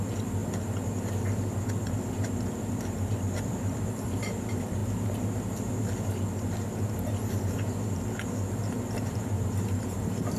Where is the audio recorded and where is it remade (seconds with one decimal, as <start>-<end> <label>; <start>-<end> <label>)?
0.0-0.4 remade; 0.4-2.7 recorded; 2.7-4.8 remade; 4.8-8.8 recorded; 8.8-10.4 remade